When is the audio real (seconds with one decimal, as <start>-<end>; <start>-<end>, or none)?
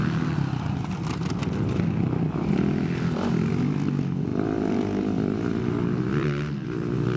0.0-7.2